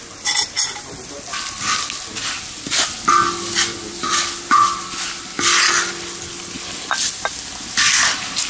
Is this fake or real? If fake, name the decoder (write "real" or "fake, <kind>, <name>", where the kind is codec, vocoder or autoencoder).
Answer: real